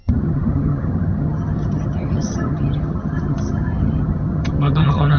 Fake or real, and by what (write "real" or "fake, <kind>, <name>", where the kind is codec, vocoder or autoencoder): fake, vocoder, HiFi-GAN